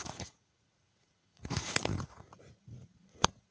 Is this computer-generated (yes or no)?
yes